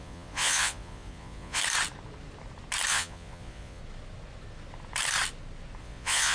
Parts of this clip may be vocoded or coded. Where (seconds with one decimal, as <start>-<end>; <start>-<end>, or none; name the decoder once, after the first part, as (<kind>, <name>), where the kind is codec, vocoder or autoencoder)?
0.0-1.6 (vocoder, Vocos); 2.9-3.8; 5.8-6.3